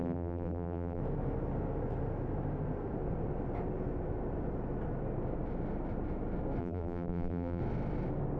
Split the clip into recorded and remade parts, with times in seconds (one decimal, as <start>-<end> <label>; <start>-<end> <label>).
0.0-1.0 remade; 1.0-6.6 recorded; 6.6-7.6 remade; 7.6-8.4 recorded